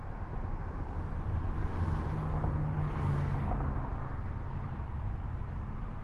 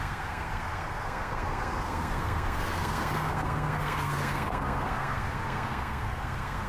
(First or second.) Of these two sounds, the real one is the first